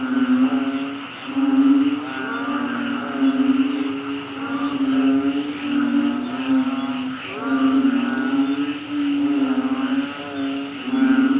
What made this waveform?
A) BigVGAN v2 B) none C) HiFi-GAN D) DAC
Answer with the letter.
B